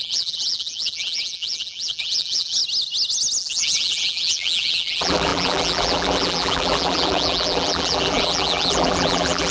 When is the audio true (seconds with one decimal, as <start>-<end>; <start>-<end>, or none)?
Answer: 2.6-3.4